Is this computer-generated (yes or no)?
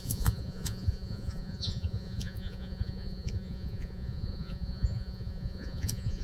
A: yes